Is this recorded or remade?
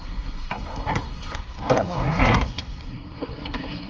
remade